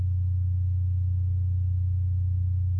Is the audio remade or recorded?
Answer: recorded